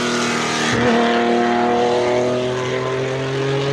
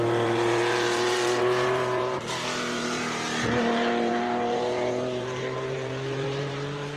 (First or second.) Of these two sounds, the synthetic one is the second